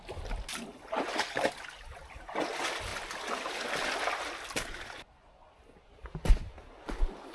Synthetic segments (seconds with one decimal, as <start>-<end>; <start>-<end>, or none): none